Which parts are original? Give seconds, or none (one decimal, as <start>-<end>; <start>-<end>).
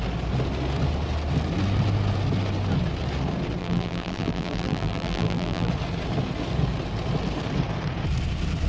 0.0-3.6; 5.7-8.7